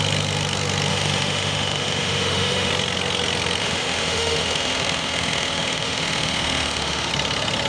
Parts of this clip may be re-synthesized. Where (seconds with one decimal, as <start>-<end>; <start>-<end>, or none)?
0.9-2.7; 3.6-7.1